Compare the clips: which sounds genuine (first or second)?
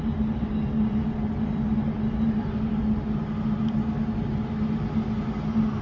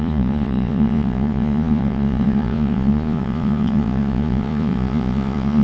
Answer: first